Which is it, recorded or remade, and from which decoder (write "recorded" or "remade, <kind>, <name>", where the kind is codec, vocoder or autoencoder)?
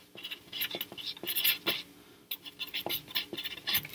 recorded